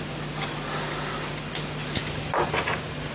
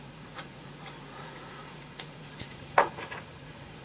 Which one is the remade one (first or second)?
second